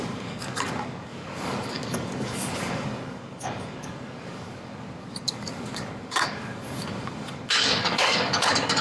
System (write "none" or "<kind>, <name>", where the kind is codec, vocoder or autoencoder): codec, DAC